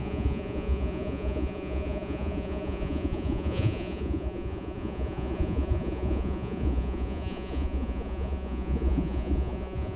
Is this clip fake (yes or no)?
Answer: yes